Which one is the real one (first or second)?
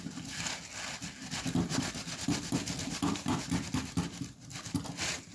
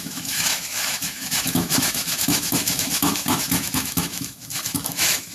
first